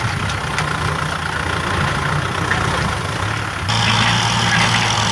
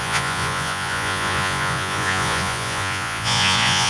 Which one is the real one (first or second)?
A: first